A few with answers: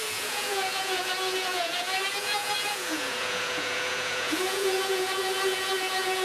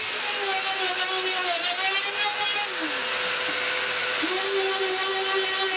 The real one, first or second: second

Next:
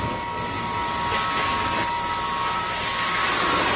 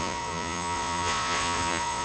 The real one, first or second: first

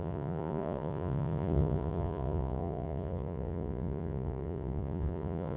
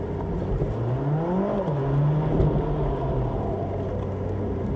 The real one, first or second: second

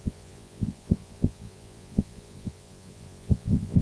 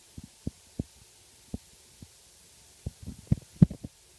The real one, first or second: second